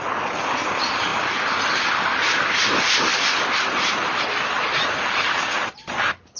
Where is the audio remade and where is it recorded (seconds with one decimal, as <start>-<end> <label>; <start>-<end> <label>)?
0.0-1.1 remade; 1.1-1.7 recorded; 1.7-6.4 remade